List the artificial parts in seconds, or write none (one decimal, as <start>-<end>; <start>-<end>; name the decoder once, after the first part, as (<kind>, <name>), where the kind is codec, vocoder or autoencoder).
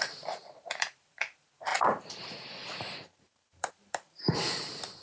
0.0-5.0 (vocoder, BigVGAN v2)